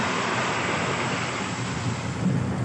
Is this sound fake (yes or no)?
no